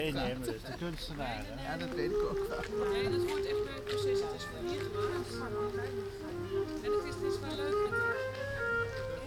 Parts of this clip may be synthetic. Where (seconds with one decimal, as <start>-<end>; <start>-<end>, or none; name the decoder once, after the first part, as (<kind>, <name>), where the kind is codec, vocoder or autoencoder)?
8.0-8.6 (codec, DAC)